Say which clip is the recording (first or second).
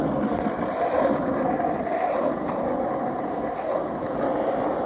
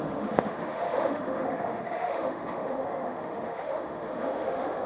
first